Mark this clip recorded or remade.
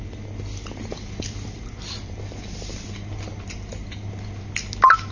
recorded